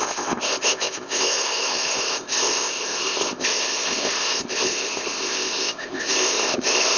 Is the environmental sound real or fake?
fake